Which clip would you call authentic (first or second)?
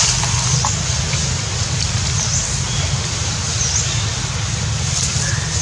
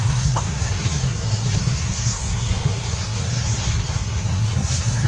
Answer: first